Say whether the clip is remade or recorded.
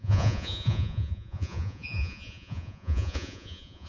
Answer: remade